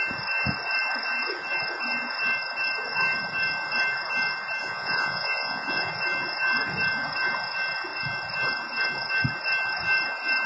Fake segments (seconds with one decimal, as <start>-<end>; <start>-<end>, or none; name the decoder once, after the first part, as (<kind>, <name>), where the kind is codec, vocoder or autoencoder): 4.6-5.9 (vocoder, Vocos)